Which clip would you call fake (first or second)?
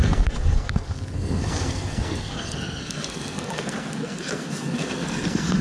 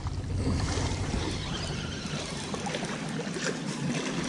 first